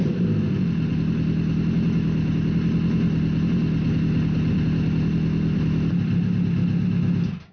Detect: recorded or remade recorded